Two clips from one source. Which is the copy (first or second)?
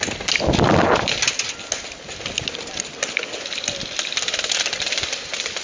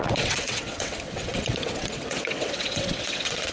second